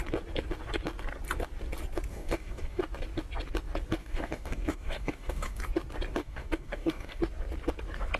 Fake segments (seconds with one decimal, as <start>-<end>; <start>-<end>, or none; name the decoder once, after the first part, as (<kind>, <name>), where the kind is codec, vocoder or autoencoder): 2.1-2.8 (codec, DAC); 4.0-5.6; 6.2-7.2